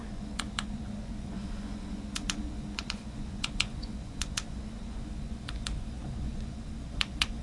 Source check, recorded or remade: remade